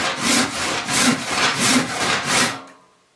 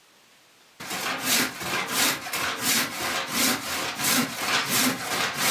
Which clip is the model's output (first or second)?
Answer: first